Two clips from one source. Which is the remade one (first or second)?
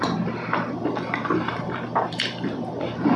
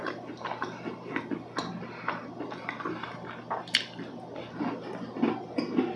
first